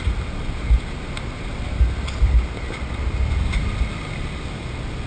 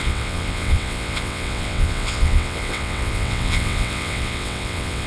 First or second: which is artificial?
second